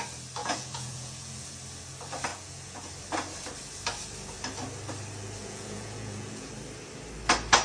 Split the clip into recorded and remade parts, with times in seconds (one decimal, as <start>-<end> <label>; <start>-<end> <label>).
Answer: 0.0-0.4 recorded; 0.4-1.5 remade; 1.5-2.3 recorded; 2.3-2.9 remade; 2.9-5.4 recorded; 5.4-6.5 remade; 6.5-7.6 recorded